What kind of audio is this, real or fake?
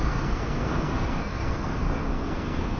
fake